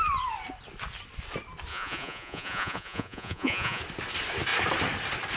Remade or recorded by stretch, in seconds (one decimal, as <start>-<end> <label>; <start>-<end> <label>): 0.0-1.7 recorded; 1.7-3.8 remade; 3.8-5.4 recorded